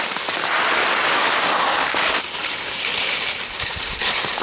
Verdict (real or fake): real